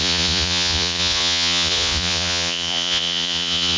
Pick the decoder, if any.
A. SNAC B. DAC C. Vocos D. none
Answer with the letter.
C